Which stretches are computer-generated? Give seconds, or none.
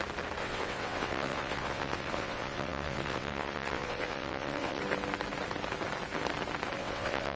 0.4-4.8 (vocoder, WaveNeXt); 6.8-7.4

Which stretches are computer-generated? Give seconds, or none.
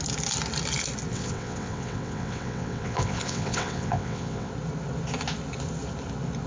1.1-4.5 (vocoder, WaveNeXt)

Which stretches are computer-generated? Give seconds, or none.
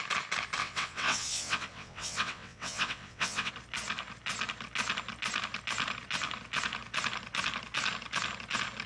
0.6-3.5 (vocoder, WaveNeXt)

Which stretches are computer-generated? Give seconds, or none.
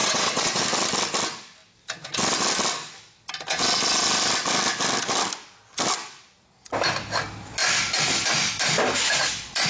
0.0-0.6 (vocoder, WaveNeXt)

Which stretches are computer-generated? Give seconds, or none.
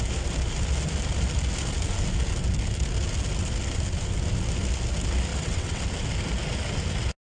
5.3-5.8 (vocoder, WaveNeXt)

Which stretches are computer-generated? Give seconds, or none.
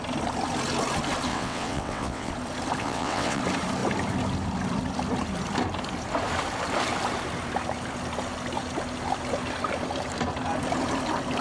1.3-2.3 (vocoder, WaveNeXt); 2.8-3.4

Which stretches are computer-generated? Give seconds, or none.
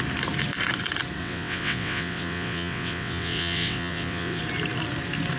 1.2-4.4 (vocoder, WaveNeXt)